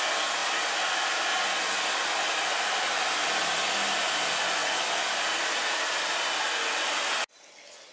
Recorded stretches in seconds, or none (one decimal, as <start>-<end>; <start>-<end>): 0.0-7.9